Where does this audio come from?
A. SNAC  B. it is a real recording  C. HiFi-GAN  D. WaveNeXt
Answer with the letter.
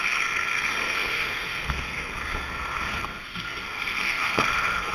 A